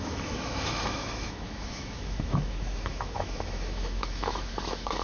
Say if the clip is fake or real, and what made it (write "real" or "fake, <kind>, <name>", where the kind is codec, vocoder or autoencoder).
fake, autoencoder, DAC-VAE